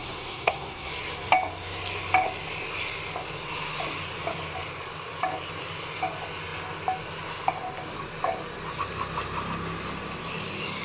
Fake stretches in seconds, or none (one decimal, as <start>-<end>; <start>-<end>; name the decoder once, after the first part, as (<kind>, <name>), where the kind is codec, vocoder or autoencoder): 0.0-0.9 (codec, SNAC)